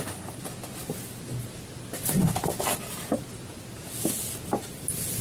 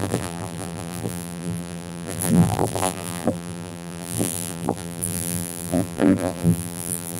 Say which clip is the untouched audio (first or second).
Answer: first